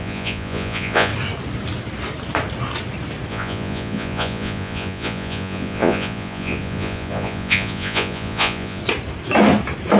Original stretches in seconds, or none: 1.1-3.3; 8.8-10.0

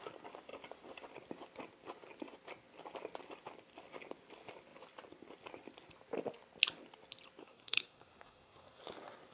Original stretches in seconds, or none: 0.0-7.4; 8.8-9.3

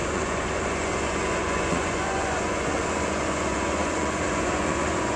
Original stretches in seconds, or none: none

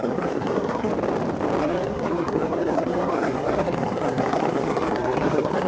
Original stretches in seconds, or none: 0.9-1.6

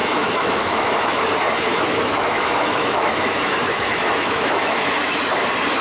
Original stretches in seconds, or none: 1.2-1.7; 5.2-5.8

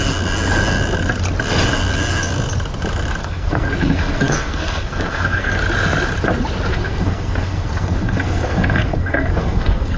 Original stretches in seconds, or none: 0.0-3.2; 5.6-6.7

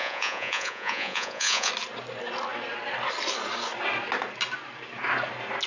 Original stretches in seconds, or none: 1.7-5.7